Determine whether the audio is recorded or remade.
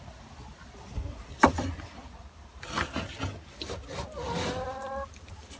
recorded